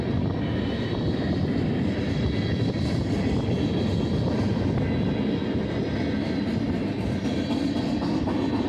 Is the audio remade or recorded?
recorded